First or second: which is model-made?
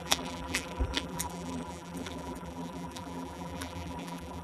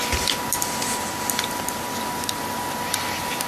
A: first